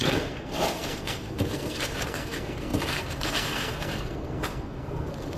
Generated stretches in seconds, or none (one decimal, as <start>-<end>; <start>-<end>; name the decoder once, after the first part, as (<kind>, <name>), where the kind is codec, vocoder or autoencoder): 0.0-5.4 (codec, SNAC)